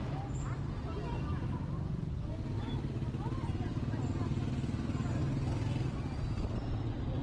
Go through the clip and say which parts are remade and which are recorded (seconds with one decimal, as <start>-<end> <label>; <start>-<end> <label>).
0.0-7.2 recorded